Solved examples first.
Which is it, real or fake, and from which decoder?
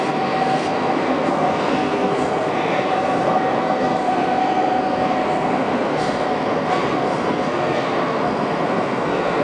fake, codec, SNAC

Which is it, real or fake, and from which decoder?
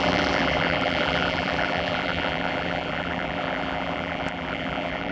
fake, vocoder, BigVGAN v2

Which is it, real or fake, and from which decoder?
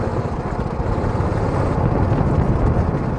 real